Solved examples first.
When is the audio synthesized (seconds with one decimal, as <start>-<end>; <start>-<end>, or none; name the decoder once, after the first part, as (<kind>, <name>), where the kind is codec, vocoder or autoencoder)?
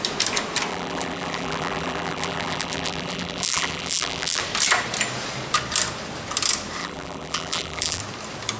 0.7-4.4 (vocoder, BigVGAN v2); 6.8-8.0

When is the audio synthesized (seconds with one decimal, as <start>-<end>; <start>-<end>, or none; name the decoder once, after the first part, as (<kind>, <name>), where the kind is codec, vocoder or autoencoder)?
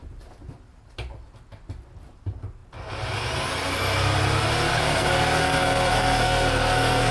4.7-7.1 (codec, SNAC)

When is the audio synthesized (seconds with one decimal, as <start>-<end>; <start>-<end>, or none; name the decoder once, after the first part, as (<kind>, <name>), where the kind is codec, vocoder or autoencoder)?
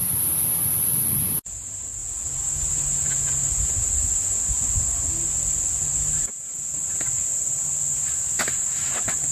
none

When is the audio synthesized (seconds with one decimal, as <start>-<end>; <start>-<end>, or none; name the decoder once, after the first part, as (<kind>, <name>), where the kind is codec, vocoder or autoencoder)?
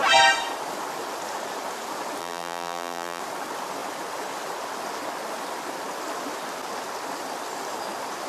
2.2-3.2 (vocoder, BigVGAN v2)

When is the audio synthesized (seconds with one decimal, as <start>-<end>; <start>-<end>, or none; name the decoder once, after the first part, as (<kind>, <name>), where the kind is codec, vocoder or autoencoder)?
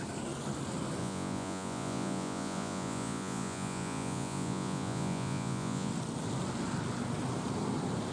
1.0-5.9 (vocoder, Vocos)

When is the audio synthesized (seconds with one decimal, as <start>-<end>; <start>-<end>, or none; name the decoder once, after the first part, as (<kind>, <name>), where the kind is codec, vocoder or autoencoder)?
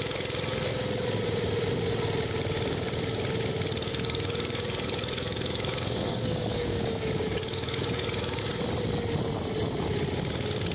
3.9-8.4 (codec, DAC)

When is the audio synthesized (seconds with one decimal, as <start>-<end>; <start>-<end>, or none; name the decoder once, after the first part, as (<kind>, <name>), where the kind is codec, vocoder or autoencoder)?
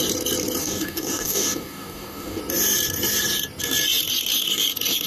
0.6-2.4 (codec, DAC)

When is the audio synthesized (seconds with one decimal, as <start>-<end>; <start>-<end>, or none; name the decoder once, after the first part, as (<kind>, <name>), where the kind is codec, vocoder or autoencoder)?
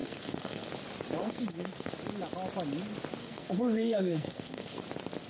0.0-0.7 (codec, SNAC); 1.2-1.9; 3.2-4.8